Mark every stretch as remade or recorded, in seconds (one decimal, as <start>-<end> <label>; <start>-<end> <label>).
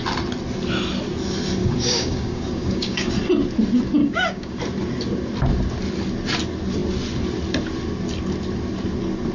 0.0-1.6 recorded; 1.6-3.1 remade; 3.1-4.0 recorded; 4.0-4.6 remade; 4.6-9.3 recorded